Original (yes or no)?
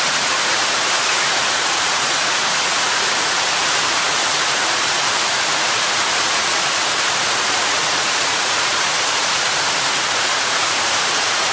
no